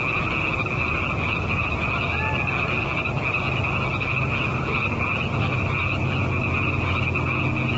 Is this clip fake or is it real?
real